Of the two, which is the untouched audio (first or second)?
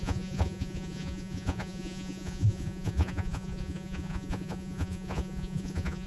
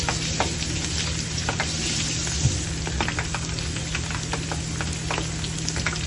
second